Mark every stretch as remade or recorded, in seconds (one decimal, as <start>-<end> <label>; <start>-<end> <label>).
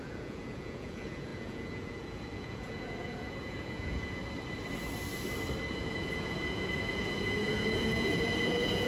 0.0-4.2 remade; 4.2-5.7 recorded; 5.7-8.9 remade